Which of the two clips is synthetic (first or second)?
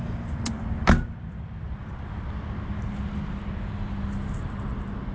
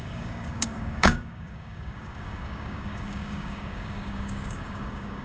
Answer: second